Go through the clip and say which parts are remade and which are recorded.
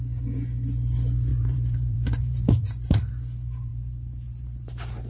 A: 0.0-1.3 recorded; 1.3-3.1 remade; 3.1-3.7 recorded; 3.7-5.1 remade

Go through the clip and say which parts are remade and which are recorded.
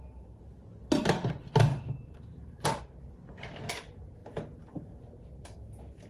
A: 0.0-1.7 recorded; 1.7-2.8 remade; 2.8-4.2 recorded; 4.2-5.0 remade; 5.0-6.1 recorded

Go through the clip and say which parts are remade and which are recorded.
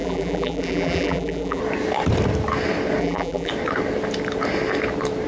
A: 0.0-1.6 remade; 1.6-3.0 recorded; 3.0-3.5 remade; 3.5-5.3 recorded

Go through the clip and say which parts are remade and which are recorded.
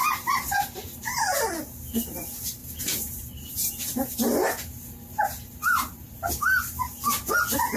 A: 0.0-1.5 remade; 1.5-2.6 recorded; 2.6-6.3 remade; 6.3-7.8 recorded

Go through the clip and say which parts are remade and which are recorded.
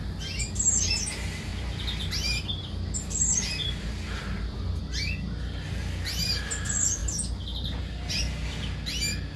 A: 0.0-9.4 recorded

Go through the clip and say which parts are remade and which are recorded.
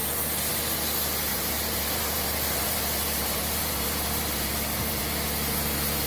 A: 0.0-1.3 recorded; 1.3-5.0 remade; 5.0-6.1 recorded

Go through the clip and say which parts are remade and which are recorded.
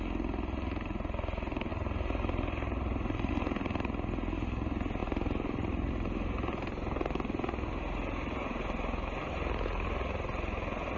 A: 0.0-1.7 recorded; 1.7-3.3 remade; 3.3-5.0 recorded; 5.0-5.9 remade; 5.9-11.0 recorded